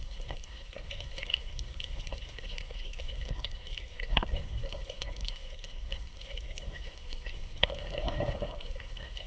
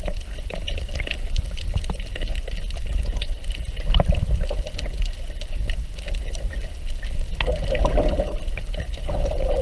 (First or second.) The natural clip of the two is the second